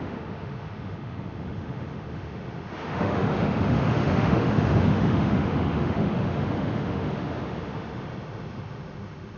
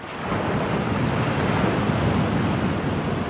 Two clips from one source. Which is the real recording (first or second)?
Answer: second